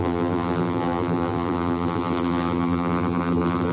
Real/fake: fake